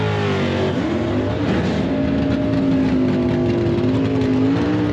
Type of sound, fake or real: real